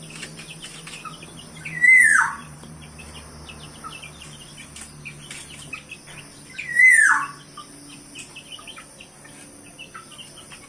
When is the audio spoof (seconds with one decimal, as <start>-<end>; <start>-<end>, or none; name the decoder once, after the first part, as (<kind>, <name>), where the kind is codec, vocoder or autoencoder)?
2.1-3.0 (vocoder, BigVGAN v2)